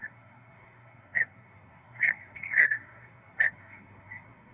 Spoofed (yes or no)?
yes